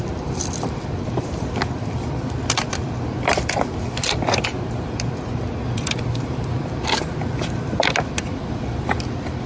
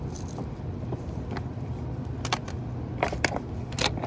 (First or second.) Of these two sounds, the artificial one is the first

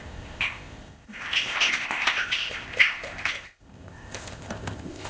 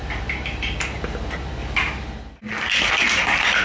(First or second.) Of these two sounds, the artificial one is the first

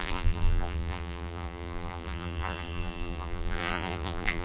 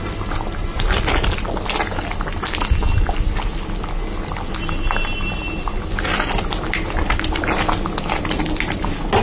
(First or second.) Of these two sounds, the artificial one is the first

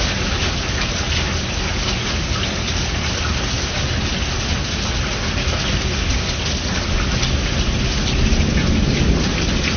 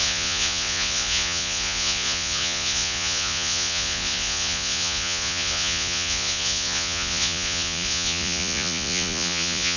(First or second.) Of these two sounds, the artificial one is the second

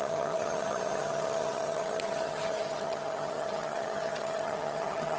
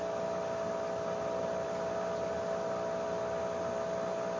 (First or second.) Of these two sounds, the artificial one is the first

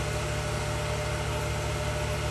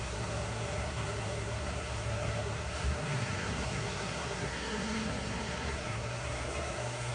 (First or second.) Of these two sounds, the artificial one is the second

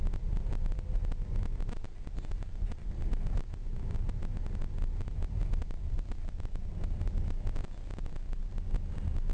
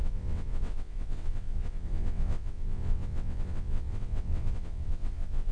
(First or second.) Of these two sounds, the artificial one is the second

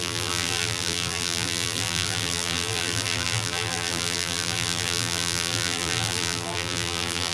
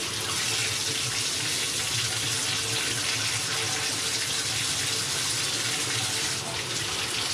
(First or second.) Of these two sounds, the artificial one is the first